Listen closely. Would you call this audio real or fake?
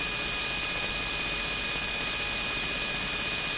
real